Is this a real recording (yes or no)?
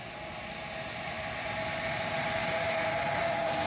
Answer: yes